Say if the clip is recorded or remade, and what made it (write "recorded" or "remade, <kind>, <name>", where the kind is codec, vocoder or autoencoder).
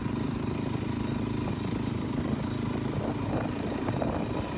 remade, vocoder, BigVGAN v2